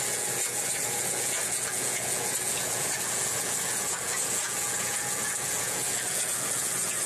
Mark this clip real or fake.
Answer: fake